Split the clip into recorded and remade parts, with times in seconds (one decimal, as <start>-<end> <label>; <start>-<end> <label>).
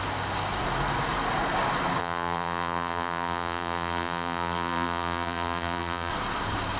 0.0-2.0 recorded; 2.0-6.1 remade; 6.1-6.8 recorded